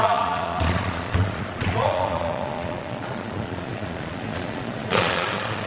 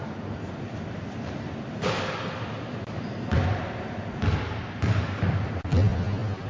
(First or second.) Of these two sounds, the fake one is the first